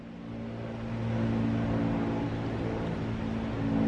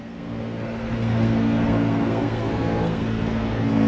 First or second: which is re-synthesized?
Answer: second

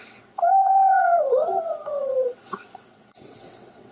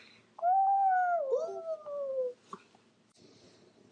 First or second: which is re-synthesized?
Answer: first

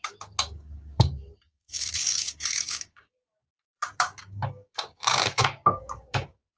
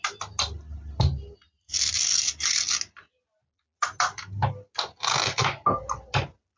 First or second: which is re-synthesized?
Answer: first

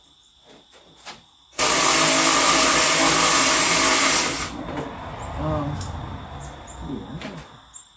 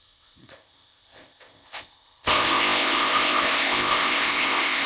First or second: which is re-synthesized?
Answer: second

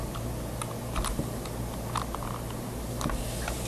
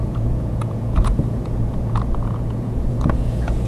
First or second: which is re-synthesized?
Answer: second